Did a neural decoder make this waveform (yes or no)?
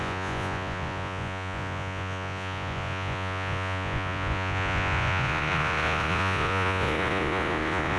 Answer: yes